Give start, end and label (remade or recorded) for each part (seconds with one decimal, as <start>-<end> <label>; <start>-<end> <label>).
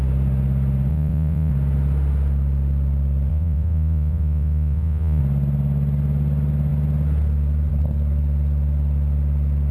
0.0-0.9 recorded; 0.9-1.5 remade; 1.5-3.3 recorded; 3.3-5.2 remade; 5.2-9.7 recorded